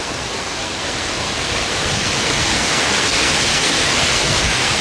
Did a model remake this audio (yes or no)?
yes